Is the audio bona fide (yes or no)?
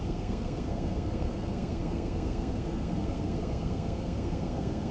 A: no